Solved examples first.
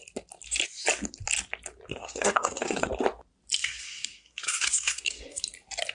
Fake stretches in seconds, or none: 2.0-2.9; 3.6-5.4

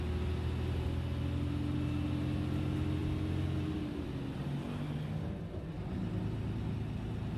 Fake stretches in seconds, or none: none

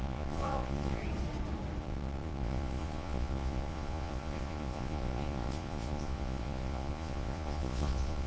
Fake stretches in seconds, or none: 0.0-1.0; 1.8-8.3

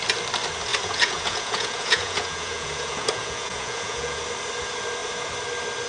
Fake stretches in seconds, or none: 0.7-4.2